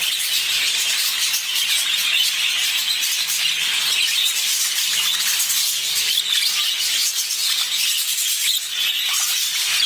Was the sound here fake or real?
real